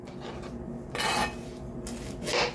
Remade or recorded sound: recorded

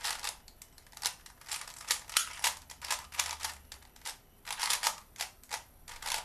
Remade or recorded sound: recorded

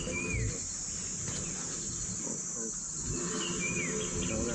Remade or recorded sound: recorded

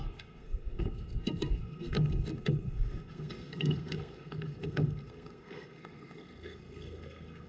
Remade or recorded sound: remade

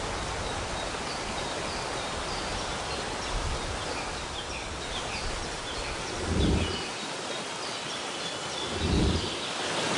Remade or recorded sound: remade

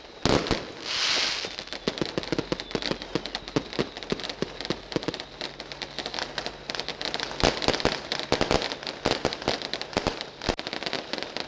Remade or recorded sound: recorded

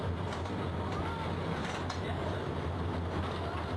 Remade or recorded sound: recorded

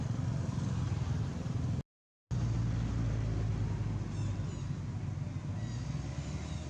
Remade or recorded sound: recorded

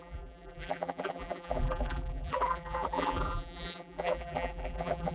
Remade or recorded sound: remade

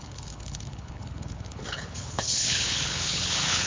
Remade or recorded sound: remade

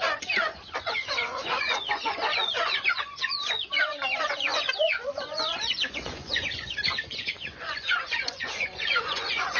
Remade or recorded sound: remade